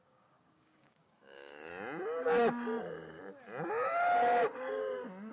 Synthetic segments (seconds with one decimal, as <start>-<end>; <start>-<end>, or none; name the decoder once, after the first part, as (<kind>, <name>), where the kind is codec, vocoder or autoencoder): 0.0-1.7 (codec, DAC)